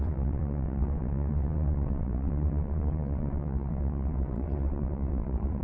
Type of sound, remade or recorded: remade